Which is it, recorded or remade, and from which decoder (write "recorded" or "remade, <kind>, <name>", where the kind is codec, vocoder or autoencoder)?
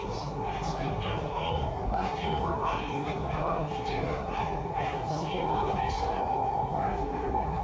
remade, codec, SNAC